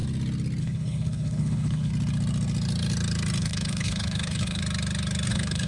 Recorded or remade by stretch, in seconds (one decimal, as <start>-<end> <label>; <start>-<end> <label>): 0.0-0.6 recorded; 0.6-1.9 remade; 1.9-3.4 recorded; 3.4-4.6 remade; 4.6-5.3 recorded; 5.3-5.7 remade